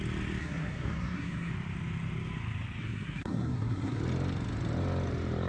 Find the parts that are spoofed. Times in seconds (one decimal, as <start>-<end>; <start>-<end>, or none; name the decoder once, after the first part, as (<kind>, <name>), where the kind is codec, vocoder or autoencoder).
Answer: 0.4-1.5 (codec, SNAC); 2.8-4.0